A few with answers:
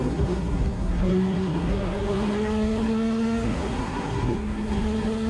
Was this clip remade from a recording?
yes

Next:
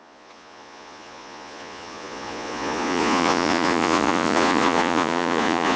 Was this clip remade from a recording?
yes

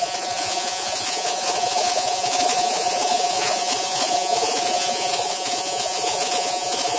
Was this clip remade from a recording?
yes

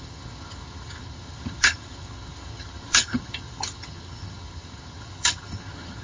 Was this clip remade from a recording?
yes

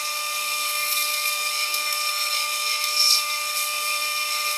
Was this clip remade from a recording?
yes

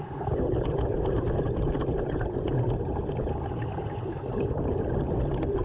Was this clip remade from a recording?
no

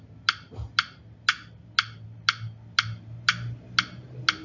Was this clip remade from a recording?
no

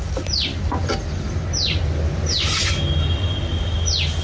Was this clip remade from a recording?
no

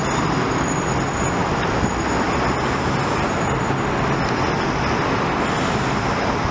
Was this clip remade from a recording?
no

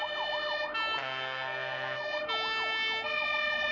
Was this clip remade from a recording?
no